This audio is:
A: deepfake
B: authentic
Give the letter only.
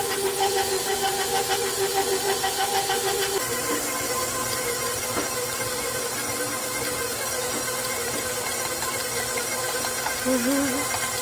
B